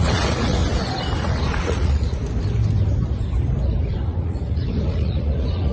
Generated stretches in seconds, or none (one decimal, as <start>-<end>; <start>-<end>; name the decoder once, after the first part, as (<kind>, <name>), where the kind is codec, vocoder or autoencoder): 0.0-0.6 (vocoder, Vocos); 1.2-2.2; 3.9-5.7